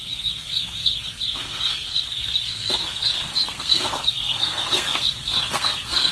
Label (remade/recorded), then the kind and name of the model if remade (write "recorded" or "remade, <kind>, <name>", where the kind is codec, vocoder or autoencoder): remade, codec, SNAC